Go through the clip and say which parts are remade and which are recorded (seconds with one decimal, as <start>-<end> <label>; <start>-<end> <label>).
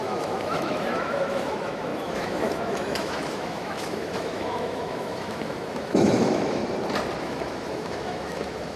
0.0-6.6 remade; 6.6-7.2 recorded; 7.2-8.8 remade